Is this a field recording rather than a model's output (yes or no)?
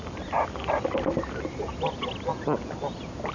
yes